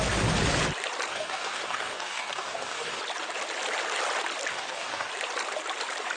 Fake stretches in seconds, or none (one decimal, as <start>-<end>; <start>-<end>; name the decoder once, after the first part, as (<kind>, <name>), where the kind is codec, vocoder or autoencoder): 1.1-3.0 (codec, DAC); 4.5-5.1